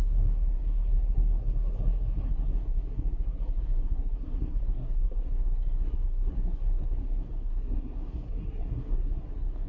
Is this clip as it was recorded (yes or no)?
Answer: no